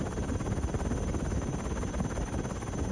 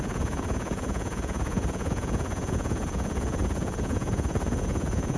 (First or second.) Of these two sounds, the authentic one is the first